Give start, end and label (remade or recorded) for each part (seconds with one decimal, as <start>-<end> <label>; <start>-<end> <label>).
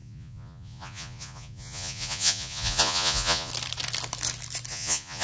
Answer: 0.0-3.5 remade; 3.5-4.7 recorded; 4.7-5.2 remade